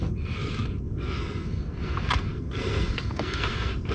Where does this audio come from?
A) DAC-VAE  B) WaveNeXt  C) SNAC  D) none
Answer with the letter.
C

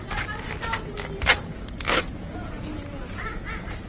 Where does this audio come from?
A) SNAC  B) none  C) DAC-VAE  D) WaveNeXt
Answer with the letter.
B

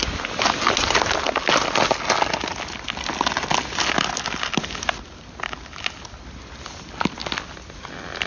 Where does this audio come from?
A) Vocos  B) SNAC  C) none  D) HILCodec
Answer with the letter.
C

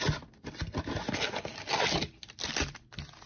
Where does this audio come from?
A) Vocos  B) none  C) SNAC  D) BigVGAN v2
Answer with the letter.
B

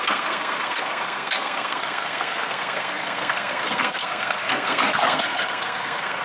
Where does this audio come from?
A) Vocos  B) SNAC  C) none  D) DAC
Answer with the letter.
B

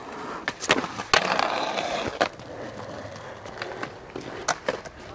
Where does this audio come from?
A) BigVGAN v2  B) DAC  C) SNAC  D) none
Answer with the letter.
D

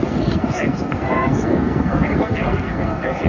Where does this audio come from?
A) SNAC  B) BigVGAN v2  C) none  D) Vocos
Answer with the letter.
A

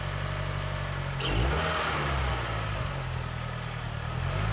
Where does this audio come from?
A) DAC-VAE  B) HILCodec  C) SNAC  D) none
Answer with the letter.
D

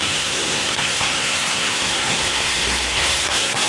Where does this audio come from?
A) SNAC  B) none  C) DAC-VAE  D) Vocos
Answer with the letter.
A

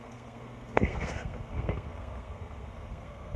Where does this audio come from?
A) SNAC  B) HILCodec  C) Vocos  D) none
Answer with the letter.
A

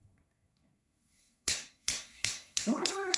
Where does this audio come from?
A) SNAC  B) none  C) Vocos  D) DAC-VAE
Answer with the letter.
A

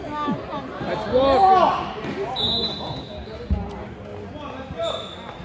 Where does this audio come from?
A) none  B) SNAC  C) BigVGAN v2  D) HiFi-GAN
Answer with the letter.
A